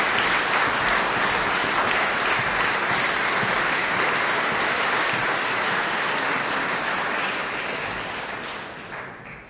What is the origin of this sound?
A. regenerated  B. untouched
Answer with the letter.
B